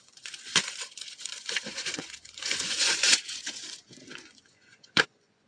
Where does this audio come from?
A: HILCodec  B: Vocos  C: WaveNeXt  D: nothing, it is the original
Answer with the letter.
B